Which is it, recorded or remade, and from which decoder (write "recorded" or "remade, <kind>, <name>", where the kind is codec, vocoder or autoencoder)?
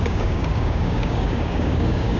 remade, codec, DAC